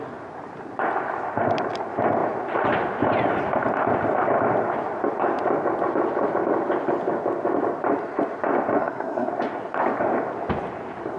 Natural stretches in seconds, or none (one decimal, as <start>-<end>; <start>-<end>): 0.0-8.8; 9.3-11.2